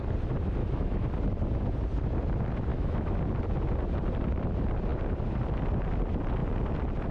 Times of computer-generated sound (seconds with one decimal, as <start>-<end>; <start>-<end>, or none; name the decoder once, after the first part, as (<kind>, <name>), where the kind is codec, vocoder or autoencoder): 0.6-1.1 (autoencoder, DAC-VAE); 2.7-3.2